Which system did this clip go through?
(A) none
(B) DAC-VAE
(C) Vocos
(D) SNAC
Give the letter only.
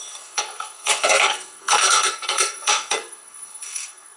D